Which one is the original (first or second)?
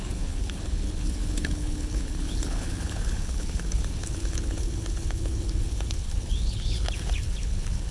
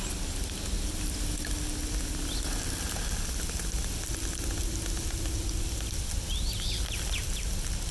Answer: second